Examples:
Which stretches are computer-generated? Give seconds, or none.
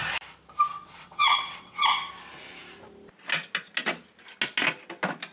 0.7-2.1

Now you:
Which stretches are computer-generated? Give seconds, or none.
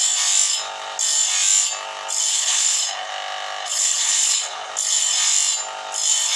2.3-3.1; 3.6-4.7